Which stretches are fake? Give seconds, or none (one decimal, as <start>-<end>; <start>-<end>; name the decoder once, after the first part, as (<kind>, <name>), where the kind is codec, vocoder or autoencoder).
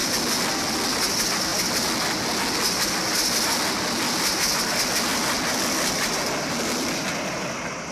none